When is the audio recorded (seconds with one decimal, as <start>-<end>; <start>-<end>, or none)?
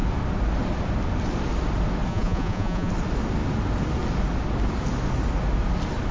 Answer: 0.0-2.1; 2.9-6.1